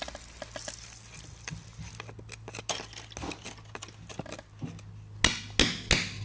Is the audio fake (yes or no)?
no